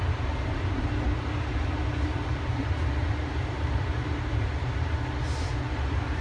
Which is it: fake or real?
fake